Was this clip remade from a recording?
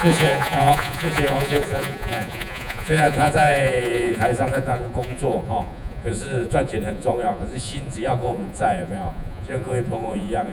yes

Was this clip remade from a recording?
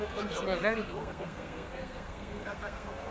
yes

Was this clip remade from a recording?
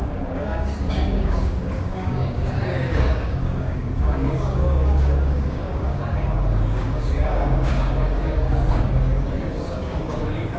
yes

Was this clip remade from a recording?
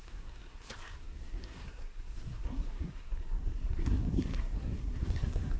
yes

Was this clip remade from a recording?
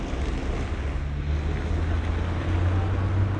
no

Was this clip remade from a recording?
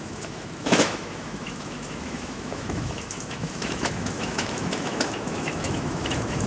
yes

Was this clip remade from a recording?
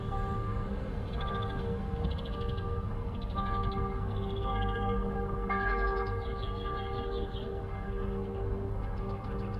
yes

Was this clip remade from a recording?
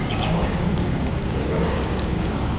yes